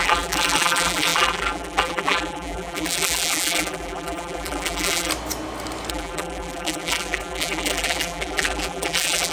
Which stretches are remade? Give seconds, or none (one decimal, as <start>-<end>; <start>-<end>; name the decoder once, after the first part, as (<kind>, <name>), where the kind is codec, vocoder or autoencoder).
0.0-5.1 (vocoder, BigVGAN v2); 5.9-9.3